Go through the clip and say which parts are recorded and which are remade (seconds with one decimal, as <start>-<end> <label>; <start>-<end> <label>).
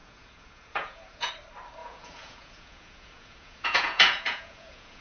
0.0-1.3 remade; 1.3-1.8 recorded; 1.8-5.0 remade